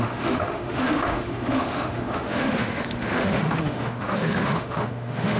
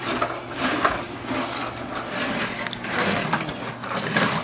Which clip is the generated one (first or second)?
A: first